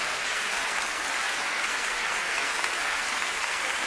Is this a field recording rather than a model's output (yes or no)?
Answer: no